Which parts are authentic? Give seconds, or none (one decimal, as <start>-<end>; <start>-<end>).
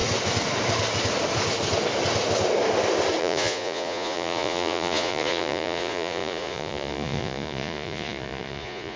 0.0-3.2